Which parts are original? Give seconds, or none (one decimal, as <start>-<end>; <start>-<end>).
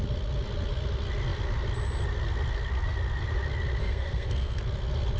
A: 0.0-3.8; 4.6-5.2